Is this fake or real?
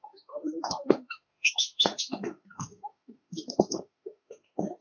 fake